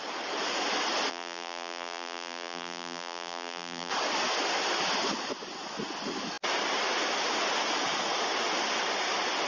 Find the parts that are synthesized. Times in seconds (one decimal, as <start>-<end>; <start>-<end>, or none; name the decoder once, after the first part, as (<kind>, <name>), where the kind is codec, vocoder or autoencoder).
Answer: 1.1-3.9 (vocoder, BigVGAN v2)